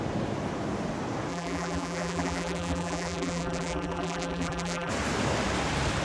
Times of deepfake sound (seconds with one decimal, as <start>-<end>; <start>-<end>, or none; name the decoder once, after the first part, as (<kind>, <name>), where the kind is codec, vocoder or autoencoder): 1.3-4.9 (vocoder, BigVGAN v2)